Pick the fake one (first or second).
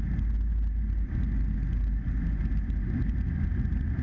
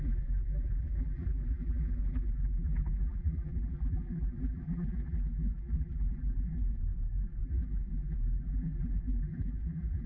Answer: second